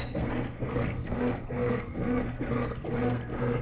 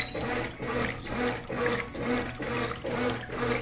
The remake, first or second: first